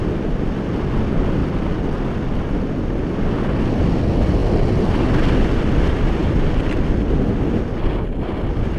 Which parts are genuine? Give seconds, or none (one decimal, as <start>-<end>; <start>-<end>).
0.0-4.4; 5.3-8.8